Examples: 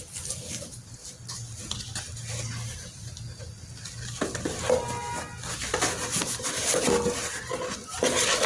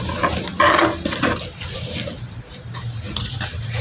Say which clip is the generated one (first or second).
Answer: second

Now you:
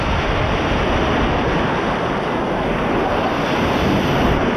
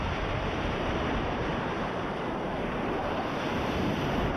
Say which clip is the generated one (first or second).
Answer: second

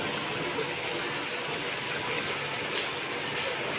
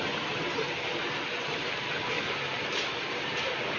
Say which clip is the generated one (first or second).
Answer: second